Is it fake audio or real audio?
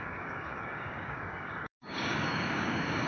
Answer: fake